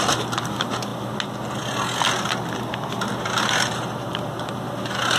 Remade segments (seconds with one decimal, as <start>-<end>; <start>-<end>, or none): 0.0-0.9; 2.9-5.2

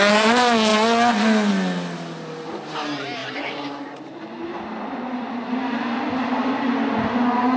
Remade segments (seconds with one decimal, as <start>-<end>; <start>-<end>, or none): 3.2-4.2

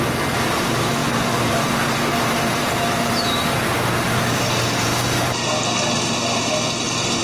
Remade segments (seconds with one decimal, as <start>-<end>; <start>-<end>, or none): 0.0-1.0; 1.5-4.9

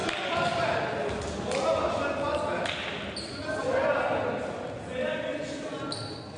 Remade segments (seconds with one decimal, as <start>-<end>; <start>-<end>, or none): none

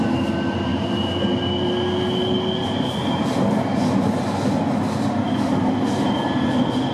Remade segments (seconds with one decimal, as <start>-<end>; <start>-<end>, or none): 0.0-0.7; 1.4-6.9

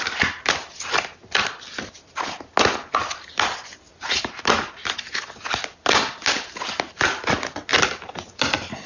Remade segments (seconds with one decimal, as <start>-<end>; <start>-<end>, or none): 7.7-8.4

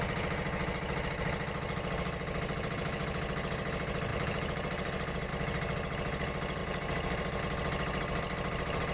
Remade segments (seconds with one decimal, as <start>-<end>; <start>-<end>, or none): 4.1-5.3; 6.6-7.4